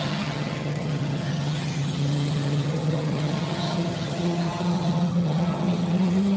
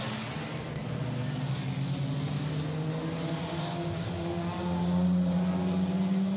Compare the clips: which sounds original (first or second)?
second